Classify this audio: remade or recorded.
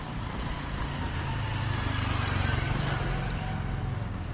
recorded